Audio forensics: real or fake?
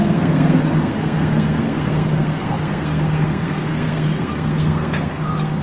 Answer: fake